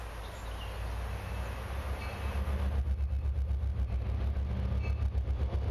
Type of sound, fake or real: real